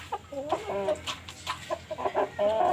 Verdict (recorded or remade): recorded